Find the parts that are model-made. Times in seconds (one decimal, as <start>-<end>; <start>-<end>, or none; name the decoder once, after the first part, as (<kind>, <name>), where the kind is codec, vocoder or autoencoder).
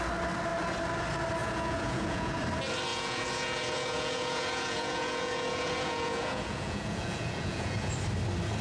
1.4-2.4 (vocoder, Vocos); 2.9-7.9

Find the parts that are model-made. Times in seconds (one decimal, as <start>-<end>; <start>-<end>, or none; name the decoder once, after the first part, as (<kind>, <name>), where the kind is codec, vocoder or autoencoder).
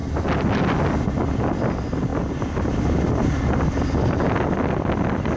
none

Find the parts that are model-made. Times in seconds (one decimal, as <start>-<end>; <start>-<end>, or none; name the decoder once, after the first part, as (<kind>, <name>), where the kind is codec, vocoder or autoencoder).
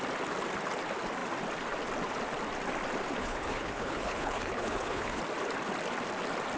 3.2-5.2 (codec, HILCodec)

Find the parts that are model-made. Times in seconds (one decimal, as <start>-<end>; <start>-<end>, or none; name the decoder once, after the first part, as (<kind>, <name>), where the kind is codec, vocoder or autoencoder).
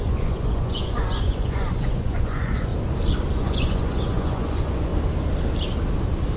0.0-2.7 (vocoder, Vocos); 3.3-4.9